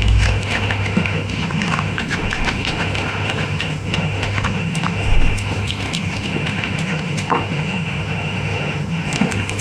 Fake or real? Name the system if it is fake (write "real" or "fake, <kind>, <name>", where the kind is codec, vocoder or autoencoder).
fake, autoencoder, DAC-VAE